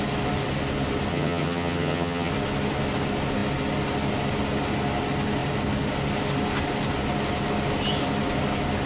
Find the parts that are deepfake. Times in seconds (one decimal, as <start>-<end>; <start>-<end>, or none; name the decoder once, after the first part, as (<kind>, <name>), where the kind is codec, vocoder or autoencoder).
1.1-2.3 (vocoder, HiFi-GAN)